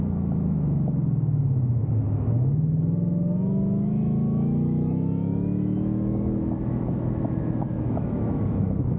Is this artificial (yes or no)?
yes